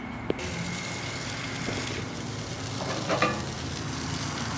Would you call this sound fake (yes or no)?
no